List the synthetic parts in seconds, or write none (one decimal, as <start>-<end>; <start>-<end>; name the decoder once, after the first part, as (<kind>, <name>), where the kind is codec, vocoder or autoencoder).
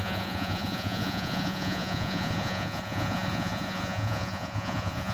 0.0-5.1 (vocoder, Vocos)